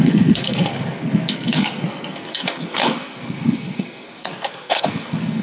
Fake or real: fake